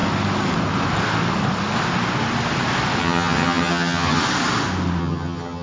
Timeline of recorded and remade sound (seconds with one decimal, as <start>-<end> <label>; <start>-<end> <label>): 0.0-3.0 recorded; 3.0-4.2 remade; 4.2-5.0 recorded; 5.0-5.6 remade